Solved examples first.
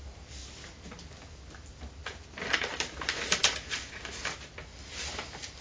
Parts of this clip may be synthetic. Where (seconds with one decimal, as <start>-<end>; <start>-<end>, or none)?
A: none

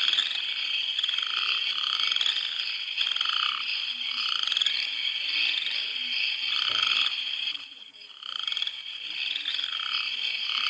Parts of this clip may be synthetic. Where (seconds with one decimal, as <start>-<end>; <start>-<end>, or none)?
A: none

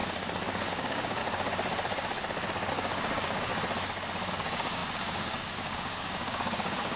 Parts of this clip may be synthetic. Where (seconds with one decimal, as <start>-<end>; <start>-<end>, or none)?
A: 0.7-1.2; 2.7-3.5; 4.3-7.0